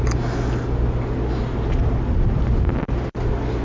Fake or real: real